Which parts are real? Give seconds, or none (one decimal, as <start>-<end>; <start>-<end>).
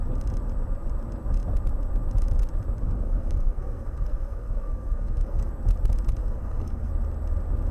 0.0-2.8; 5.5-6.2; 6.9-7.7